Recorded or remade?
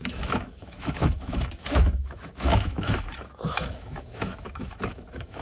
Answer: remade